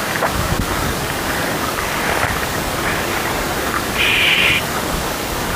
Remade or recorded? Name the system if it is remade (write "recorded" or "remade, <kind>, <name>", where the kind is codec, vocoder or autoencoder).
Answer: remade, codec, DAC